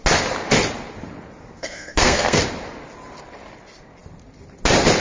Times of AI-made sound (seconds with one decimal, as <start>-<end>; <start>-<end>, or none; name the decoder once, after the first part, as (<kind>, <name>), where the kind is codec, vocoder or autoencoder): 1.4-2.4 (codec, SNAC)